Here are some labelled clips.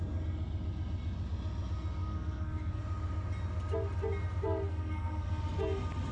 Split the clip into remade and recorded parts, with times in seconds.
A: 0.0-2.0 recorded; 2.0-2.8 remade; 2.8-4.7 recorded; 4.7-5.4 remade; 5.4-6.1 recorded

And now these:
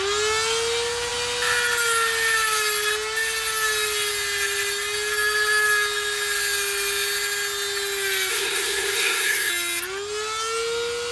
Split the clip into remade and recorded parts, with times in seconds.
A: 0.0-8.3 recorded; 8.3-9.5 remade; 9.5-11.1 recorded

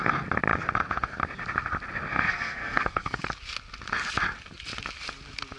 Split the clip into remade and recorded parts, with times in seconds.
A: 0.0-2.1 recorded; 2.1-3.3 remade; 3.3-5.6 recorded

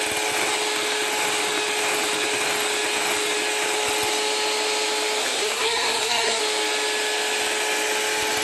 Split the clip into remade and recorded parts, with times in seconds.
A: 0.0-5.2 recorded; 5.2-6.4 remade; 6.4-8.4 recorded

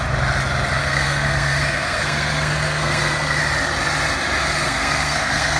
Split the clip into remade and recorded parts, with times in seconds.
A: 0.0-0.8 recorded; 0.8-3.4 remade; 3.4-4.4 recorded; 4.4-5.6 remade

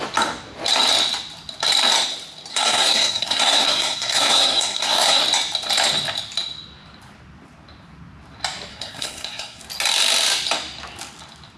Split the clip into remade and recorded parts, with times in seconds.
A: 0.0-2.5 recorded; 2.5-5.2 remade; 5.2-8.7 recorded; 8.7-9.6 remade; 9.6-11.6 recorded

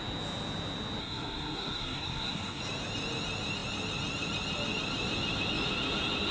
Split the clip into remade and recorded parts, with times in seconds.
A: 0.0-1.0 recorded; 1.0-2.6 remade; 2.6-6.3 recorded

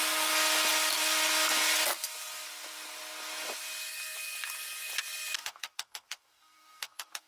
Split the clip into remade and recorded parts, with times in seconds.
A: 0.0-5.4 recorded; 5.4-7.3 remade